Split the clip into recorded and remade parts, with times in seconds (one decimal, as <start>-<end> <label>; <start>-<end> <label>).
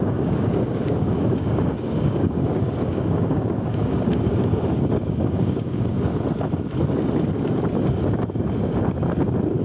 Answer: 0.0-6.1 remade; 6.1-9.6 recorded